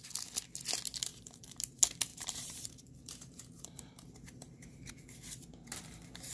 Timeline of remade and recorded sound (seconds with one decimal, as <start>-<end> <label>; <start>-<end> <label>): 0.0-1.1 recorded; 1.1-1.6 remade; 1.6-2.1 recorded; 2.1-4.9 remade; 4.9-6.3 recorded